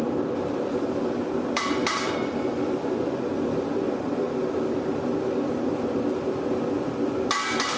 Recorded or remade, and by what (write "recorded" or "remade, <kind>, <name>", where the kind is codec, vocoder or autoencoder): remade, vocoder, BigVGAN v2